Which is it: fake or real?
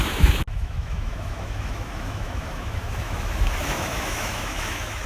fake